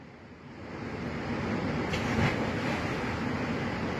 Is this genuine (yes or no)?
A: yes